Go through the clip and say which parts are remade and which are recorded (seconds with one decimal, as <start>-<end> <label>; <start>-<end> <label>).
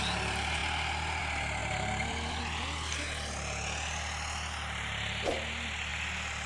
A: 0.0-1.6 recorded; 1.6-2.4 remade; 2.4-6.5 recorded